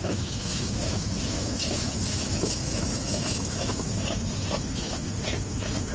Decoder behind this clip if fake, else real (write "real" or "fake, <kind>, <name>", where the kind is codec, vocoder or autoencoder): fake, autoencoder, DAC-VAE